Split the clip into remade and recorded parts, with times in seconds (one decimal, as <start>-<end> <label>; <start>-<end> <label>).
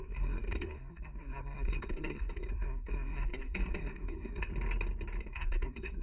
0.0-4.5 remade; 4.5-5.2 recorded; 5.2-6.0 remade